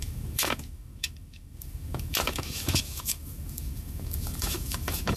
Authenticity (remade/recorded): remade